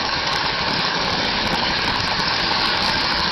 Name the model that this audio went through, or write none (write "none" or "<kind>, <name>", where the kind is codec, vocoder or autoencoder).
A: codec, DAC